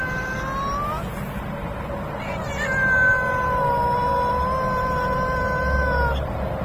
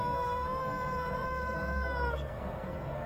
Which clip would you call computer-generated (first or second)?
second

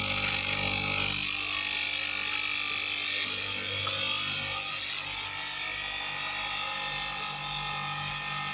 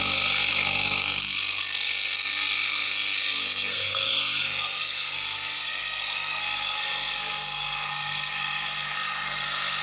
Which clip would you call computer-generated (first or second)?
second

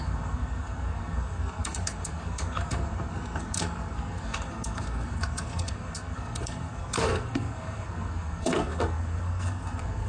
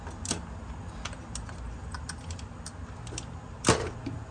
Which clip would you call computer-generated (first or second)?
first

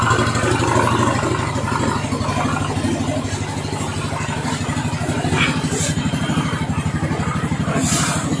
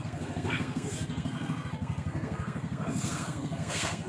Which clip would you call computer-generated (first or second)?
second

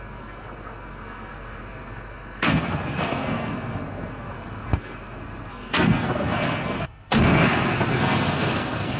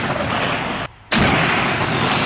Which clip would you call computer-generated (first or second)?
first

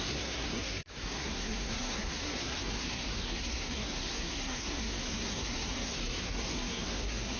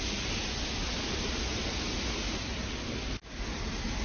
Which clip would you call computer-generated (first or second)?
first